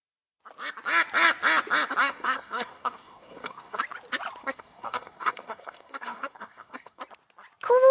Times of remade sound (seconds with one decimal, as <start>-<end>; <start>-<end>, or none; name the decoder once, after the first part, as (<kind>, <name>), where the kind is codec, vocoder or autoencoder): 2.0-3.8 (codec, SNAC); 4.4-7.0